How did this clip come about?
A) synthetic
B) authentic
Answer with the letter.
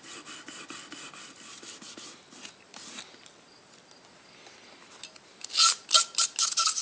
B